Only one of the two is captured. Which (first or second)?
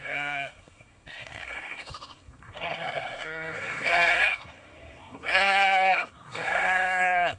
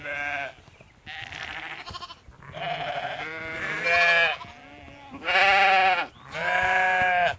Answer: second